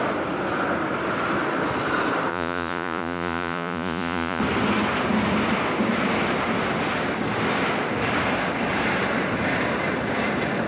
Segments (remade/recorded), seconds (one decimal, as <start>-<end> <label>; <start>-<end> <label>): 0.0-2.3 recorded; 2.3-4.4 remade; 4.4-10.7 recorded